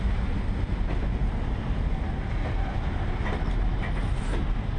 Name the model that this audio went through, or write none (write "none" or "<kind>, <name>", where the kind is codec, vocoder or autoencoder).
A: none